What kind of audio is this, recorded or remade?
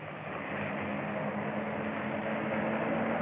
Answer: recorded